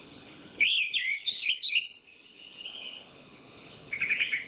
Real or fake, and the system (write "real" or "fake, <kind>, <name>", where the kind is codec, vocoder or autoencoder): fake, codec, HILCodec